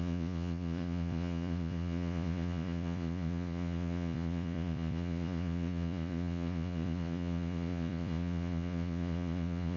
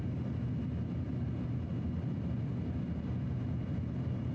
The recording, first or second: second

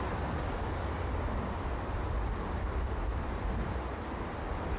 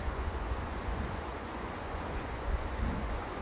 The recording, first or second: first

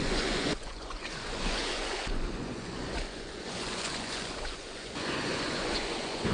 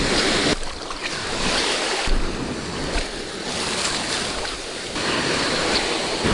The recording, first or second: second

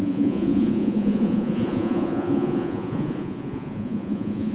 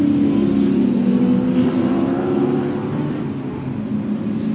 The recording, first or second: second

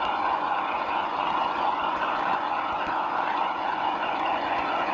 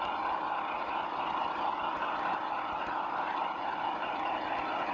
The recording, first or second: second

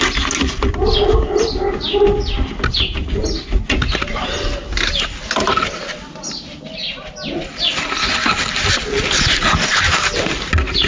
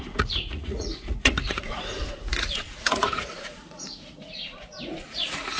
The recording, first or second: first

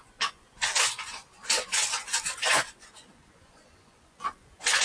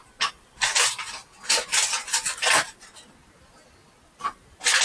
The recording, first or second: second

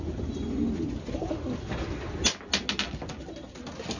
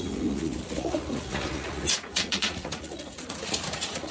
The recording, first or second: first